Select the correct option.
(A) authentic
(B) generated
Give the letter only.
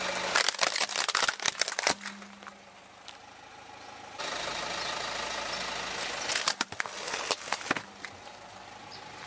A